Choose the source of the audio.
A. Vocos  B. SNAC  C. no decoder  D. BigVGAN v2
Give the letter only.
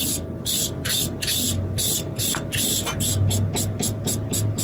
C